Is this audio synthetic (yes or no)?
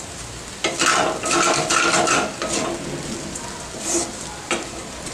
no